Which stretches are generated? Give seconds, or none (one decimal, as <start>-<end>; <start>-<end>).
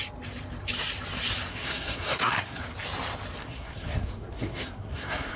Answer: 1.5-2.6; 3.4-5.4